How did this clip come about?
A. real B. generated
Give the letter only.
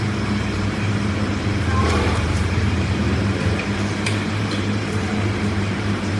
B